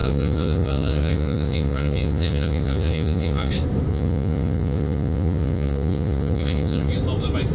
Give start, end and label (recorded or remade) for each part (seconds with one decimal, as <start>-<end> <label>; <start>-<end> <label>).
0.0-3.5 remade; 3.5-3.9 recorded; 3.9-6.9 remade; 6.9-7.5 recorded